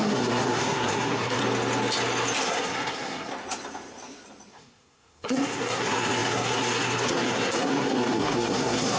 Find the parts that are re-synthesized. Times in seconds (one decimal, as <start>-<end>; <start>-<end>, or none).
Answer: 0.0-1.4; 2.4-3.3; 4.5-9.0